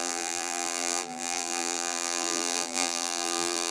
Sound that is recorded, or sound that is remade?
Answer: remade